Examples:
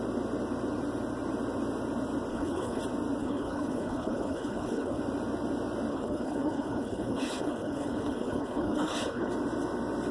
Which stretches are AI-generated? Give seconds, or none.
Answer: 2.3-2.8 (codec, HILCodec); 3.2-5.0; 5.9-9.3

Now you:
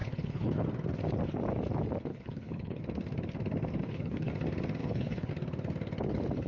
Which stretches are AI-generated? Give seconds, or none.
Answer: 0.0-0.6 (codec, HILCodec); 2.1-2.8; 3.8-4.3; 4.8-5.3

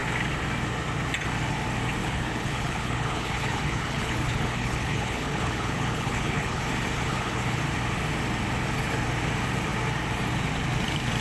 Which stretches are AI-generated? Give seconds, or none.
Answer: 2.0-6.6 (codec, HILCodec); 7.1-7.6

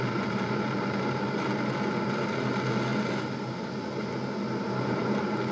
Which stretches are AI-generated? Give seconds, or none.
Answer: none

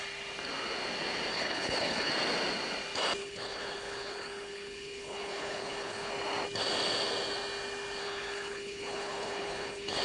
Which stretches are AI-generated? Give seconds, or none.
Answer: 1.3-2.1 (codec, HILCodec); 3.2-6.1; 8.0-10.0

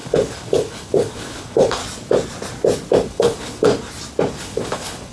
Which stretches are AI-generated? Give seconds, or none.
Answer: 0.0-1.8 (codec, HILCodec); 3.1-3.7; 4.4-5.1

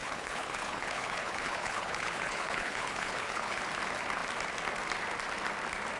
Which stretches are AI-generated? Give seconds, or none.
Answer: 0.0-3.6 (codec, HILCodec)

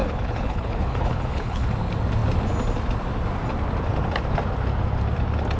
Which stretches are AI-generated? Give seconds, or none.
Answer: 0.0-1.7 (codec, HILCodec)